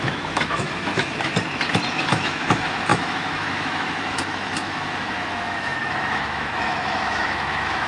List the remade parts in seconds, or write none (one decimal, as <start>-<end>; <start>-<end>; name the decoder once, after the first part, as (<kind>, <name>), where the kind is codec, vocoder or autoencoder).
0.0-1.3 (autoencoder, DAC-VAE); 1.9-7.9